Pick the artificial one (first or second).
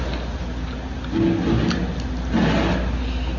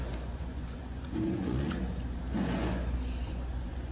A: second